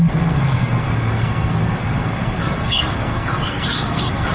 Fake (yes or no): yes